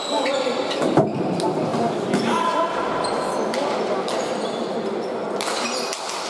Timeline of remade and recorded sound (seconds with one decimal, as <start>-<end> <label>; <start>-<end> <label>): 0.0-6.3 recorded